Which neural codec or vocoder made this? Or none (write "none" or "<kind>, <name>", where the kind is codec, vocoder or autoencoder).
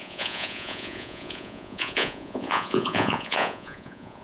vocoder, Vocos